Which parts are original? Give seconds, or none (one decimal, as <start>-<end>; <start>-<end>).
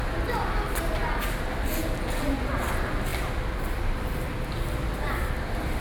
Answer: 0.0-5.8